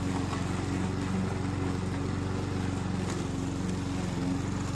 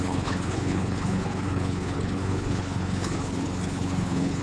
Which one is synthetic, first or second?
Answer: second